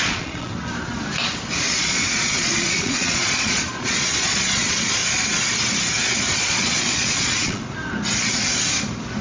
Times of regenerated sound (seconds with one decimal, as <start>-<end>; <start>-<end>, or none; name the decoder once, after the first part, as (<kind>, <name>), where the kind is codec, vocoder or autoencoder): 0.0-0.5 (vocoder, Vocos); 1.8-5.0; 6.3-7.6